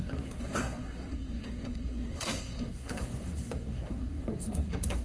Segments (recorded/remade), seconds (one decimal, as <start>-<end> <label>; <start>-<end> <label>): 0.0-5.0 remade